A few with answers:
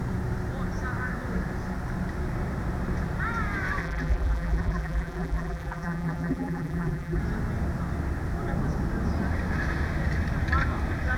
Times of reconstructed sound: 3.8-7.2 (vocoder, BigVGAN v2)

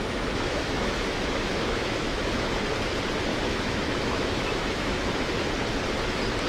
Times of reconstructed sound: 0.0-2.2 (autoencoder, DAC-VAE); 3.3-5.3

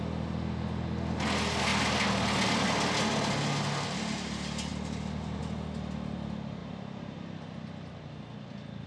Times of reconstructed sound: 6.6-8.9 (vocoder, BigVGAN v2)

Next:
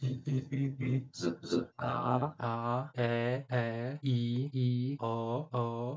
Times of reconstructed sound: 0.0-2.4 (vocoder, HiFi-GAN)

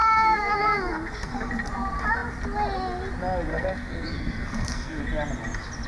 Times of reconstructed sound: 0.0-1.5 (codec, SNAC); 3.5-5.0